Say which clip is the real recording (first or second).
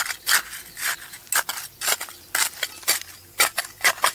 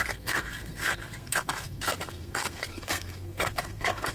first